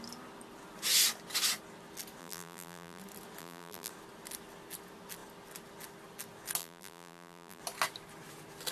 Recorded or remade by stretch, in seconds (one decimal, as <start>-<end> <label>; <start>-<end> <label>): 0.0-2.2 recorded; 2.2-3.0 remade; 3.0-3.4 recorded; 3.4-3.9 remade; 3.9-6.6 recorded; 6.6-7.6 remade; 7.6-8.7 recorded